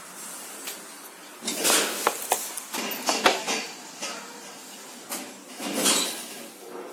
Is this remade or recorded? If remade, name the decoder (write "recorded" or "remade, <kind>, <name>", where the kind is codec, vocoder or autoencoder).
recorded